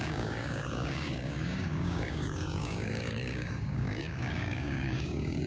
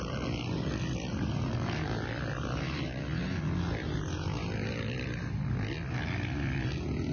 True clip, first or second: second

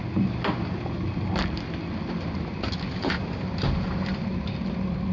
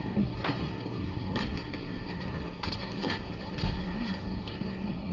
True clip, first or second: first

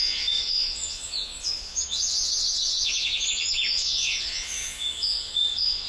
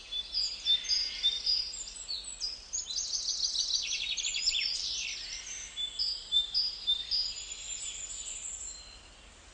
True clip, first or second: second